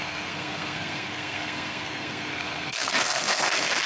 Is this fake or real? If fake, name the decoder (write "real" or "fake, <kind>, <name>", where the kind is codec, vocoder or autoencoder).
fake, codec, SNAC